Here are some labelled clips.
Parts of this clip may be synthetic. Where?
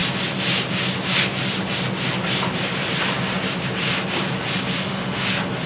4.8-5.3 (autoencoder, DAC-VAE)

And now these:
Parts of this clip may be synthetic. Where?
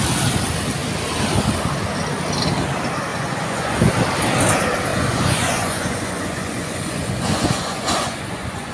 3.1-3.9 (vocoder, Vocos); 4.9-8.7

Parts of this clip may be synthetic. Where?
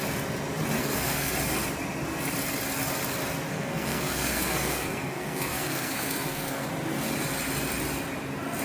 0.8-1.3 (codec, SNAC); 3.5-6.7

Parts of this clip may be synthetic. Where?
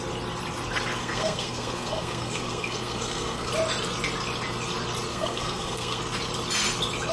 1.0-3.5 (codec, SNAC); 5.1-6.0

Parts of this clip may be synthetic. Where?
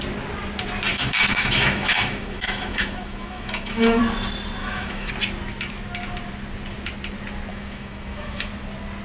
0.9-4.0 (autoencoder, DAC-VAE); 4.6-5.1; 7.5-8.5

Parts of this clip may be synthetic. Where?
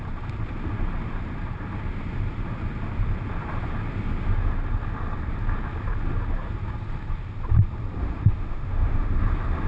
8.0-9.2 (autoencoder, DAC-VAE)